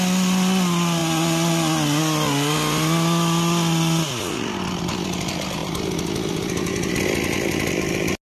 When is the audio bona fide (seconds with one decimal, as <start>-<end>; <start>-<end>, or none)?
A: 0.0-8.4